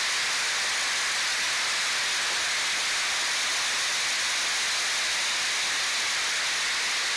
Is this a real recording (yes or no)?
yes